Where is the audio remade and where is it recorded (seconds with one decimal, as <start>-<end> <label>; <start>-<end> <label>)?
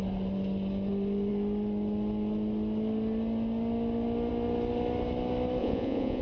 0.0-5.6 recorded; 5.6-6.2 remade